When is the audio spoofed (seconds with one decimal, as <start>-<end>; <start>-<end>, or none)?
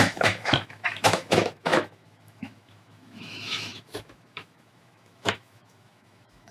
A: 0.0-6.5